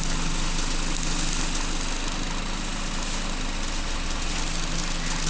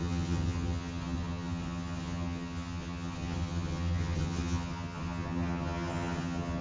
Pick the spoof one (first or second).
second